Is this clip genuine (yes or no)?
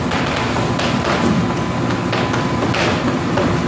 yes